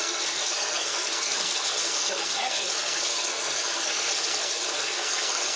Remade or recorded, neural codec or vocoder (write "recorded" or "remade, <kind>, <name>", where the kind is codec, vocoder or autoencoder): remade, codec, SNAC